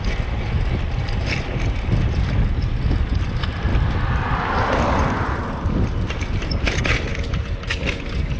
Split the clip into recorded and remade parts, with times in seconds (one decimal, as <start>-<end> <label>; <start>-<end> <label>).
0.0-3.7 recorded; 3.7-7.2 remade; 7.2-8.4 recorded